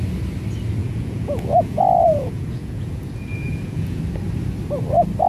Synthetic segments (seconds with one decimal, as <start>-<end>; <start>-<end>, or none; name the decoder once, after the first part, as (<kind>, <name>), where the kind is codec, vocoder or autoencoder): 0.8-4.0 (vocoder, Vocos)